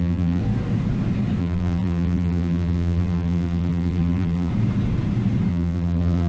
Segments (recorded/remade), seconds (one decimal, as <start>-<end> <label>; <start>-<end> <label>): 0.0-0.4 remade; 0.4-1.4 recorded; 1.4-4.5 remade; 4.5-5.5 recorded; 5.5-6.3 remade